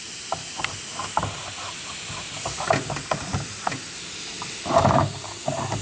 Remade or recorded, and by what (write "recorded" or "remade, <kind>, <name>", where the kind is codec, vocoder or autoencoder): recorded